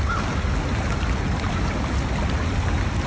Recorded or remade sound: recorded